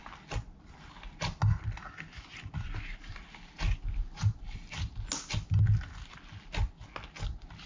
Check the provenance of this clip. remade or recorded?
recorded